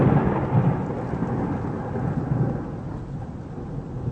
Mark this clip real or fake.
real